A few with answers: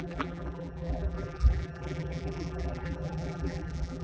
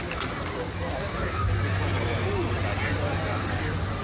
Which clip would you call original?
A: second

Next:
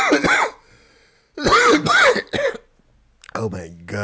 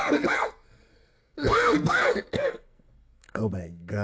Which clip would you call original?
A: first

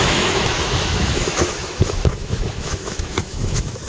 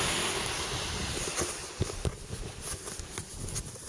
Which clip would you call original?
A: second